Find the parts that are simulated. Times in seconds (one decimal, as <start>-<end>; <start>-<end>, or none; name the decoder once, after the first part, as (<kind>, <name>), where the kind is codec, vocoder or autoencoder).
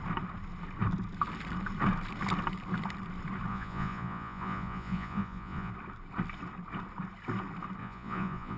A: 3.5-5.7 (vocoder, Vocos); 7.8-8.6